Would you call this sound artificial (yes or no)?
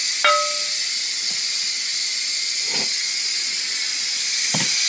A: no